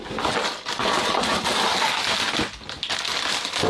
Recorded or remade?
recorded